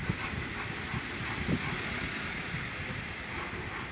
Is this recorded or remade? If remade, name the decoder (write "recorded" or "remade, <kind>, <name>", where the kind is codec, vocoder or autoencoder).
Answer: recorded